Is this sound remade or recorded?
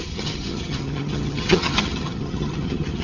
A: remade